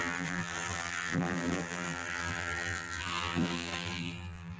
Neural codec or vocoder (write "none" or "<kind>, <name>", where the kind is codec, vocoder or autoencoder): vocoder, BigVGAN v2